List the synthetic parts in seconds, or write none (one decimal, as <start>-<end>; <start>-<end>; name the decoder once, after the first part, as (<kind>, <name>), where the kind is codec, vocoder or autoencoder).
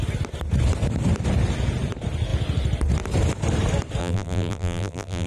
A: 4.0-5.3 (vocoder, BigVGAN v2)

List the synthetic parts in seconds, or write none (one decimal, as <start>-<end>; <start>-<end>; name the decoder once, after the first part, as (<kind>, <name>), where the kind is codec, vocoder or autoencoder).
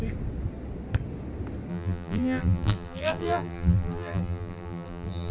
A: 1.7-5.3 (vocoder, BigVGAN v2)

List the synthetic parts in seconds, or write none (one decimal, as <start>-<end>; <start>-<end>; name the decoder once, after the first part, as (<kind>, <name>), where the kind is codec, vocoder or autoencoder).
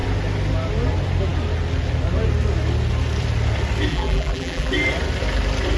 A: 3.9-4.7 (vocoder, BigVGAN v2)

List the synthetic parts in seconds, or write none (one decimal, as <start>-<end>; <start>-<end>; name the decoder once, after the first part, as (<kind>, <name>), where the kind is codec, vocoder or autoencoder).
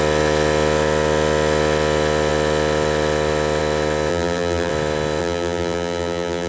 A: 4.1-4.7 (vocoder, BigVGAN v2); 5.2-6.5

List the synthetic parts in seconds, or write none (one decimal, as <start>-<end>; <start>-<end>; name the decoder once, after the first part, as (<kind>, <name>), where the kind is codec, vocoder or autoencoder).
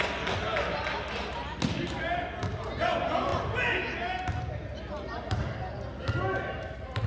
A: none